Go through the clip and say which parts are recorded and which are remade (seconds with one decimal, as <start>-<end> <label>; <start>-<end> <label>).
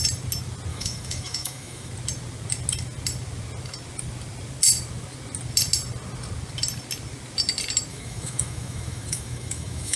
0.0-0.7 recorded; 0.7-1.9 remade; 1.9-7.9 recorded; 7.9-10.0 remade